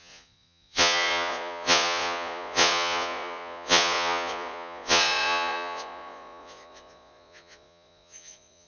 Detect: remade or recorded remade